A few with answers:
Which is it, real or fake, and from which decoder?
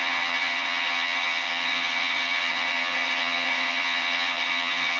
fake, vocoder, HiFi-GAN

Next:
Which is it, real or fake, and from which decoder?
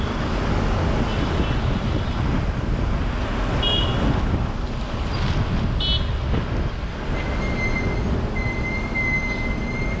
real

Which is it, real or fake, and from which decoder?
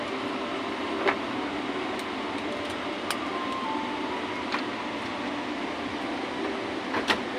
real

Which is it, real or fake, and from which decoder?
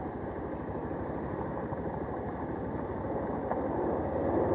real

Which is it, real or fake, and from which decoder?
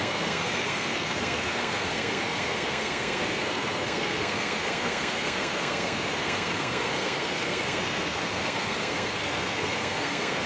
fake, codec, SNAC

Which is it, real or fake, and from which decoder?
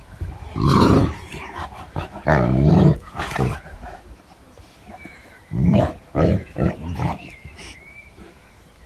fake, autoencoder, DAC-VAE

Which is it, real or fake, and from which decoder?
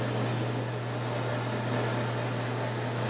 real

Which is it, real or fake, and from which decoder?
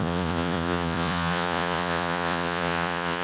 fake, vocoder, Vocos